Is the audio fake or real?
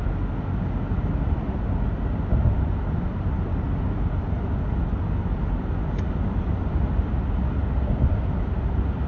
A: real